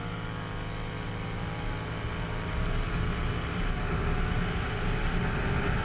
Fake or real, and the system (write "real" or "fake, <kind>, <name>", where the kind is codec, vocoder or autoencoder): real